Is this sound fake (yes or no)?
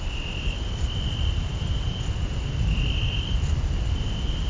no